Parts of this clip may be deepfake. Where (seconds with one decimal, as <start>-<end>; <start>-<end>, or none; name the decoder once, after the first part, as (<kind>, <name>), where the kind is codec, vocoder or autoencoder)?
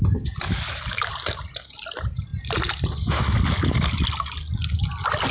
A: none